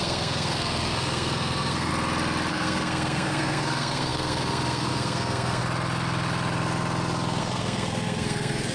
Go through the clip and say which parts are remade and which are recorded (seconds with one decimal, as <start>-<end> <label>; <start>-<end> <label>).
0.0-1.9 remade; 1.9-2.5 recorded; 2.5-5.6 remade; 5.6-7.4 recorded; 7.4-8.7 remade